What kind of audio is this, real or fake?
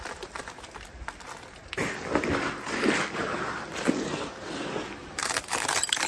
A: real